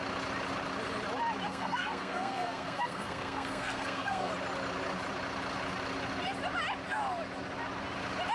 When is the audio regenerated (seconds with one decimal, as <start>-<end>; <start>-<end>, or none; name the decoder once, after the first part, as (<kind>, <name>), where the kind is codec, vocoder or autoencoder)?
1.5-4.3 (codec, SNAC)

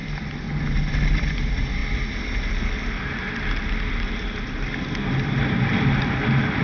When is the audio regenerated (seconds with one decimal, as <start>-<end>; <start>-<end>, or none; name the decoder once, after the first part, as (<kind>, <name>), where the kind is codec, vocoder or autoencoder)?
none

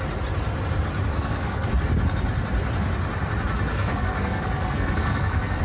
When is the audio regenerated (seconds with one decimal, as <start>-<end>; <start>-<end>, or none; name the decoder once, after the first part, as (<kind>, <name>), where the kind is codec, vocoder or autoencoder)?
1.1-1.7 (codec, SNAC); 3.7-5.6

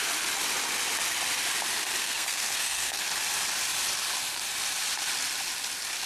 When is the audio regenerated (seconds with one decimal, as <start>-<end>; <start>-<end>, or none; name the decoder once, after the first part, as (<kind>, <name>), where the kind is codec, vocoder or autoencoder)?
2.0-3.0 (codec, SNAC)

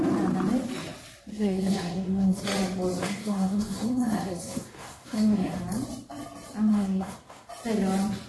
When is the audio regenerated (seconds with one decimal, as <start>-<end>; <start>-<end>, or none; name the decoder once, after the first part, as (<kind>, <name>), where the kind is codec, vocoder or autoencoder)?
1.3-2.4 (codec, SNAC); 3.0-5.6; 6.7-7.5

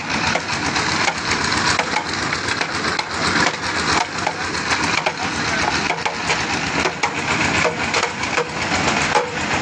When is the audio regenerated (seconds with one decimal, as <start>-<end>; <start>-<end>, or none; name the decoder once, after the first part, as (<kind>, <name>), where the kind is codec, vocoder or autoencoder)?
none

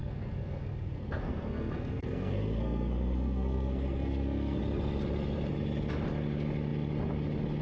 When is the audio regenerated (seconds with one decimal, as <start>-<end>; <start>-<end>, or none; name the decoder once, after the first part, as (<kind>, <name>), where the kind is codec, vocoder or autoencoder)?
0.0-4.6 (codec, SNAC)